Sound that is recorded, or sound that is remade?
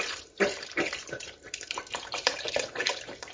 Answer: remade